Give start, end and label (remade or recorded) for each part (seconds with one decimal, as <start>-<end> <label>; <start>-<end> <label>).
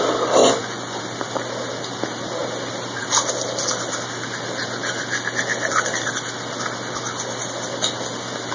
0.0-0.4 recorded; 0.4-1.0 remade; 1.0-8.5 recorded